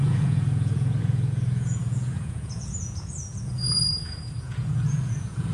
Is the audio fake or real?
fake